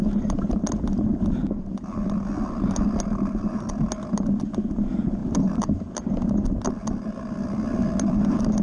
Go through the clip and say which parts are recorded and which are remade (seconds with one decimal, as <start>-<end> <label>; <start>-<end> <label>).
0.0-5.2 recorded; 5.2-6.7 remade; 6.7-8.6 recorded